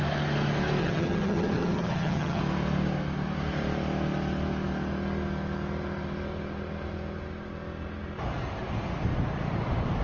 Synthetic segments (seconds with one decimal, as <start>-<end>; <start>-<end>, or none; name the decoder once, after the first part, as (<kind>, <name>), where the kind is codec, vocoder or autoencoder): 0.8-2.4 (vocoder, HiFi-GAN)